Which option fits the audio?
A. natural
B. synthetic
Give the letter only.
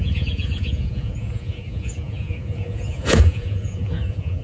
B